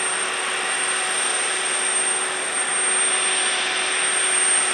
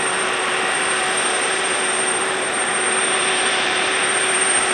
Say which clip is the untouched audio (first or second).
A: first